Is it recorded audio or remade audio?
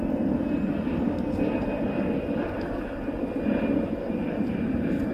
recorded